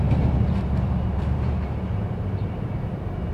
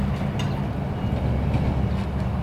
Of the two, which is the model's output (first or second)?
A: first